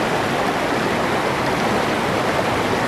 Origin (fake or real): real